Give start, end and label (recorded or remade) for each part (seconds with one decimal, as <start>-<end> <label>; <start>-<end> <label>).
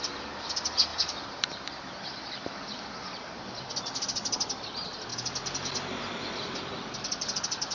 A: 0.0-0.9 recorded; 0.9-2.0 remade; 2.0-7.7 recorded